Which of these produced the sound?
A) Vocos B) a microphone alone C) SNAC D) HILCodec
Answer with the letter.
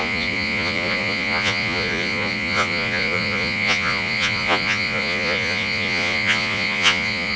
A